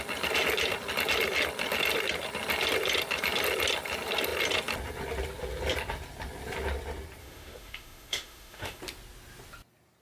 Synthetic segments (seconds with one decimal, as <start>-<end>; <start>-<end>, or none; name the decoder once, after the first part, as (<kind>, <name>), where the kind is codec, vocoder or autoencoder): 7.2-8.8 (autoencoder, DAC-VAE)